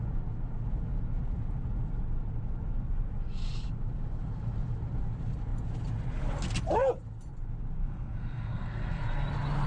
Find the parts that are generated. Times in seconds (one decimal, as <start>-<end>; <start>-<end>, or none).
7.8-9.0